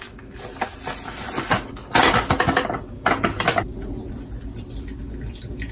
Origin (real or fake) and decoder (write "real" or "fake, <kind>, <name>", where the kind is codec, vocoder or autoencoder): real